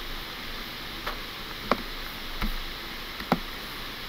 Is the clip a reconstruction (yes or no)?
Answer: no